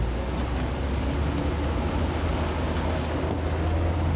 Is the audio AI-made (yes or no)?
no